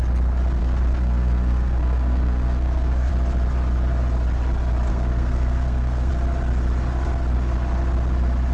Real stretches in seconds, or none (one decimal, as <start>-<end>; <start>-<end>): 0.0-0.6; 3.1-4.9; 6.1-8.5

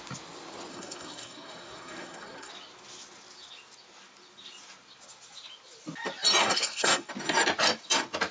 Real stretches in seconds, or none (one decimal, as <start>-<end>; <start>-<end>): 0.0-0.7; 2.5-6.4; 7.1-8.3

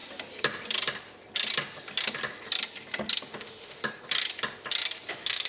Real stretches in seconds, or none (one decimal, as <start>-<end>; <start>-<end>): 0.0-3.3; 3.8-5.1

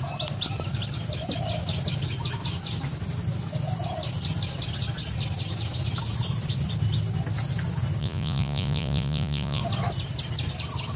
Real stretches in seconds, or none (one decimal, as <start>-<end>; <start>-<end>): 0.0-8.0; 9.6-11.0

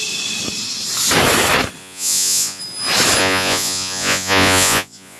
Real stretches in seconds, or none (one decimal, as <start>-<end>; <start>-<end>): 0.0-1.8; 2.6-3.2

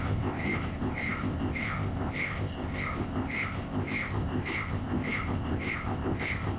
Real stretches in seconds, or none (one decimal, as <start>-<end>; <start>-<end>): none